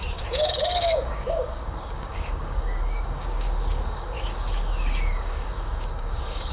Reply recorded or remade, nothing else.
remade